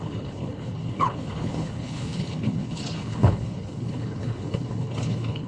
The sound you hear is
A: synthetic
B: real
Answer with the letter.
A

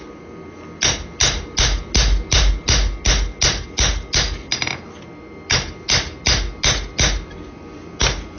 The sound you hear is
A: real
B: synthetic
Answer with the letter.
A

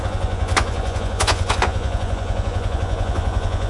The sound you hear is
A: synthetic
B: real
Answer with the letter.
A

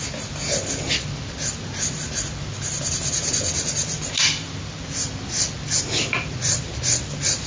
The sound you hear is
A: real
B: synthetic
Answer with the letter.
A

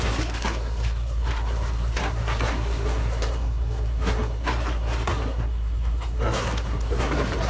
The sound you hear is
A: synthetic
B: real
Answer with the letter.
A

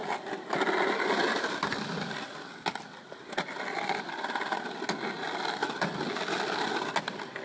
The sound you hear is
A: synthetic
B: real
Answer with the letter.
B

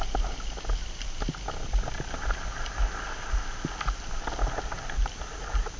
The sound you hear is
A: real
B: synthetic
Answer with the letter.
A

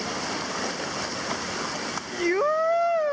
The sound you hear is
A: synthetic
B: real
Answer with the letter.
B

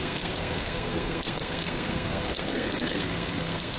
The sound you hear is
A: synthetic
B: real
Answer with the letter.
A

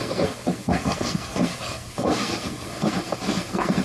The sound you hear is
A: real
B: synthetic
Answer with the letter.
B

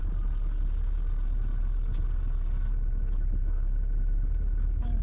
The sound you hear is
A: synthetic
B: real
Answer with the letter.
B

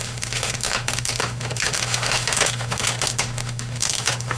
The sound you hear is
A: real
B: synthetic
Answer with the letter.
B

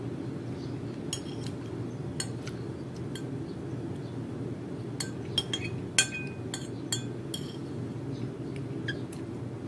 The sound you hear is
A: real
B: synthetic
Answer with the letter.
A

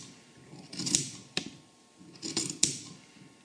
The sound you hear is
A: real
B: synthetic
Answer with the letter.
A